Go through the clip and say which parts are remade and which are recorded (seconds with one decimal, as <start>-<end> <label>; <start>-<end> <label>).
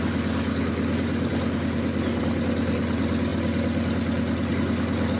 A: 0.0-5.2 recorded